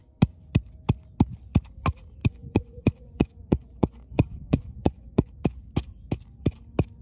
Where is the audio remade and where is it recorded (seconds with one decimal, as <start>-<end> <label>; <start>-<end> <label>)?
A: 0.0-2.2 recorded; 2.2-5.3 remade; 5.3-7.0 recorded